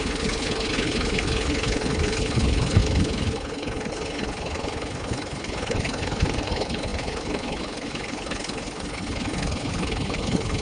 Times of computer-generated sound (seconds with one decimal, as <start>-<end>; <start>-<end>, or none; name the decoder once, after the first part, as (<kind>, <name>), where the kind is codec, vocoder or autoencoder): 0.0-10.6 (codec, HILCodec)